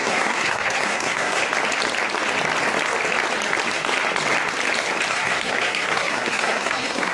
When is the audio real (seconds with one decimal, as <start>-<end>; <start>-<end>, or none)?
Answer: 1.4-5.1